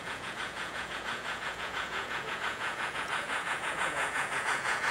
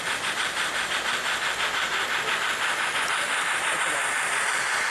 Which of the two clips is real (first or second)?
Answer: second